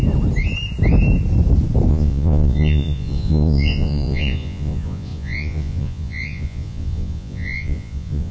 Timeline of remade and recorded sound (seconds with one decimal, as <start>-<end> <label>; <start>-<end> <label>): 0.0-1.9 recorded; 1.9-8.3 remade